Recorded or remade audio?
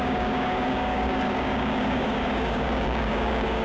remade